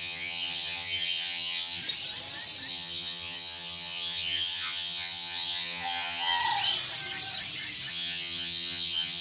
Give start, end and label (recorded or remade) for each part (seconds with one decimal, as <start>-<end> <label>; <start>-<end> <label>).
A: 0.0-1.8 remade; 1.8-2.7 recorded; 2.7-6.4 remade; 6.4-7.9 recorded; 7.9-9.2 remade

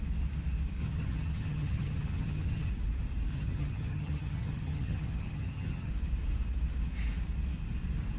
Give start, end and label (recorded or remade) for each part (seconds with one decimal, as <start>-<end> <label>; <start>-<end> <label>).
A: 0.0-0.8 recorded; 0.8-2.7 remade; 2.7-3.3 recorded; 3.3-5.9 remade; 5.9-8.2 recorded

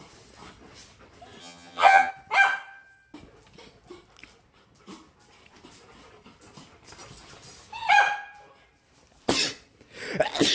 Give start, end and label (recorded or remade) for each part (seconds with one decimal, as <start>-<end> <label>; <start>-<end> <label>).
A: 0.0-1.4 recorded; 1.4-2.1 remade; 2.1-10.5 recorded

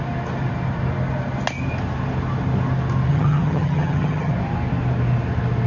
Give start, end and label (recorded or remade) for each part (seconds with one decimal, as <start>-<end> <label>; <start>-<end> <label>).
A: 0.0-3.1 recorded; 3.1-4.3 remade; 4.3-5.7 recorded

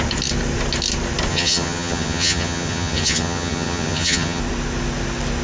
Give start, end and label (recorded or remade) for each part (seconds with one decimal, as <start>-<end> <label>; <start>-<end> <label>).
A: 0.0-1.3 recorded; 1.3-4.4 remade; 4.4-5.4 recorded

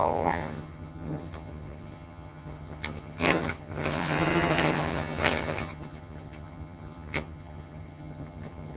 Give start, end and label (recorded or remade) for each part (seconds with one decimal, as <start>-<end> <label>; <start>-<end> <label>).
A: 0.0-8.8 remade

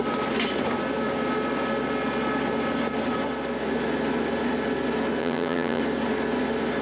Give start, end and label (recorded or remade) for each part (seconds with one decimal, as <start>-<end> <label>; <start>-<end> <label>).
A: 0.0-5.2 recorded; 5.2-5.8 remade; 5.8-6.8 recorded